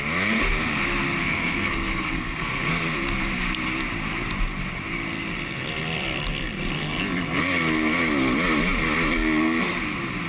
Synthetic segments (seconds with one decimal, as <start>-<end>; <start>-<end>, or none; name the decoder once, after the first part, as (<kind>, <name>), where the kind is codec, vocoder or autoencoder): 1.2-2.7 (codec, SNAC)